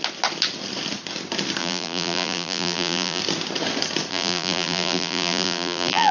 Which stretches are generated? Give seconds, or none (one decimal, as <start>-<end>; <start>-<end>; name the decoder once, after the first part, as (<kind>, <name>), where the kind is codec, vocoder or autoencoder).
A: 1.6-3.2 (vocoder, BigVGAN v2); 4.1-6.1